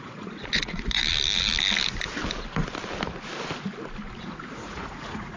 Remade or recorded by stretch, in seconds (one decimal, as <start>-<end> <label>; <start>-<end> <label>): 0.0-1.0 remade; 1.0-4.2 recorded; 4.2-5.4 remade